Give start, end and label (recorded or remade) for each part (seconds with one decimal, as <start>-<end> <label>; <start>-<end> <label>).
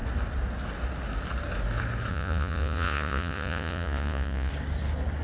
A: 0.0-2.1 recorded; 2.1-4.5 remade; 4.5-5.2 recorded